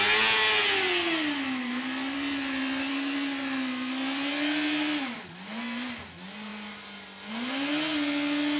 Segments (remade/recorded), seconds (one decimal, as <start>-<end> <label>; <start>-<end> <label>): 0.0-8.6 recorded